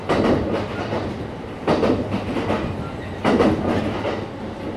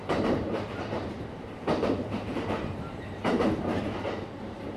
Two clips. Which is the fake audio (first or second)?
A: second